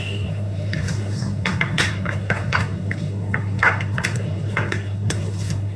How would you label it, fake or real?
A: fake